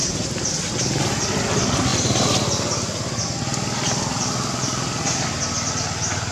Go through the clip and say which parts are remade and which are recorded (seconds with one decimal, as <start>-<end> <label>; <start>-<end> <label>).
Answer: 0.0-6.3 recorded